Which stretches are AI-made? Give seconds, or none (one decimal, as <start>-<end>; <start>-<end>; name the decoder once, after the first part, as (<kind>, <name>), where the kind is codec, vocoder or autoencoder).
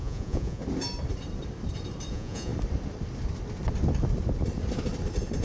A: 0.0-0.6 (vocoder, Vocos); 2.1-2.5